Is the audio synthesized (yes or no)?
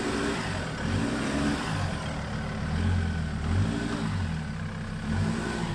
no